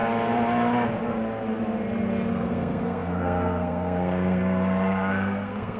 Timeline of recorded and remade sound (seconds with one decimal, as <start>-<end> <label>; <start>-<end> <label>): 0.0-2.3 recorded; 2.3-5.8 remade